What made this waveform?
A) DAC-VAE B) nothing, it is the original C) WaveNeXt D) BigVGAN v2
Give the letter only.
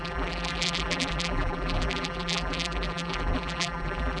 D